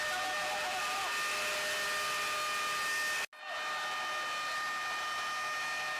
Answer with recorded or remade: recorded